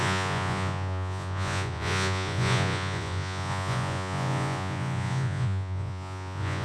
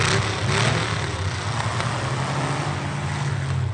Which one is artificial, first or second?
first